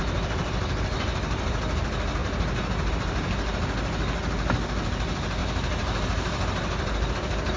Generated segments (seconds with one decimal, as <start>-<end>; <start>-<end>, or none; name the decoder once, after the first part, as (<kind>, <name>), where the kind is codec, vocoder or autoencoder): 5.4-7.1 (vocoder, BigVGAN v2)